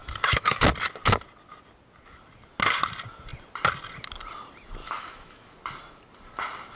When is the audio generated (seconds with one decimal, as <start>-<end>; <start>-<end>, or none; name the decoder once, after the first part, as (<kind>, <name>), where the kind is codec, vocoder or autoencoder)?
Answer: 0.0-0.6 (autoencoder, DAC-VAE); 4.8-5.5